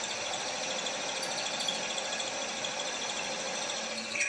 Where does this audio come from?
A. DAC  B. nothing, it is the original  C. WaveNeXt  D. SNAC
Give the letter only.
B